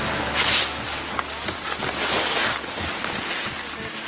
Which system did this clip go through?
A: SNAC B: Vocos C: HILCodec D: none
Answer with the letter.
D